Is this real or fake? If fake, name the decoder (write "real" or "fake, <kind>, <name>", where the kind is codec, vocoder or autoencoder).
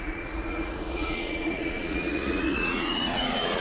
fake, vocoder, Vocos